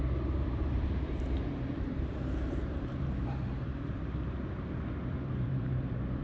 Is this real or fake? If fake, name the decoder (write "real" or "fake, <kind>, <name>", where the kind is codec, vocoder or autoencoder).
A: fake, vocoder, BigVGAN v2